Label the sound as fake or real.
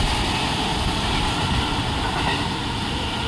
real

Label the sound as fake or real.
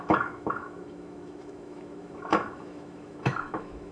fake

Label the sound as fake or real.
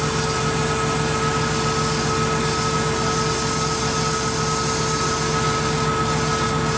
real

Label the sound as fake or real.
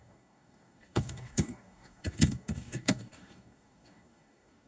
fake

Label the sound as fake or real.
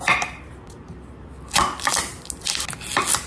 real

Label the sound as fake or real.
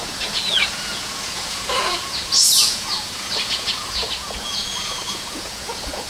fake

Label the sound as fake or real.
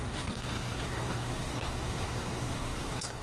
fake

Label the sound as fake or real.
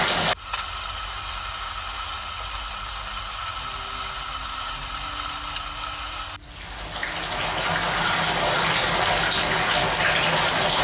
real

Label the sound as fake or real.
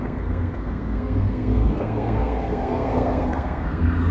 fake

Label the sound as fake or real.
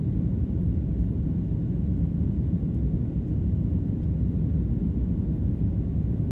real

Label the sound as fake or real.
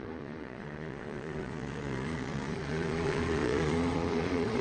fake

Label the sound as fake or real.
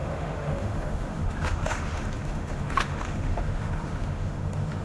fake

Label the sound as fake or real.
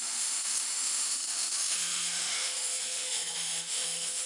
fake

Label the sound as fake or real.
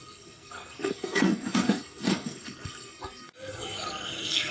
fake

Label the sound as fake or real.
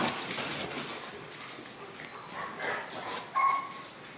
real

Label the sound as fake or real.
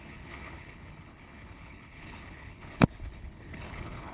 fake